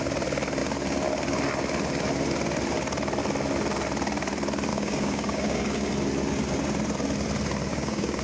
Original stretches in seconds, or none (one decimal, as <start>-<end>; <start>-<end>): 0.0-4.7; 5.9-7.7